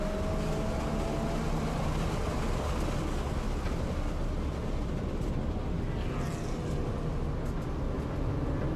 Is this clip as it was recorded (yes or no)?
yes